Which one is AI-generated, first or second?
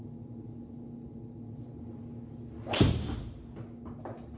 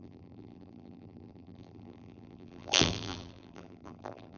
second